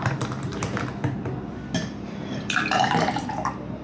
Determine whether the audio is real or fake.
fake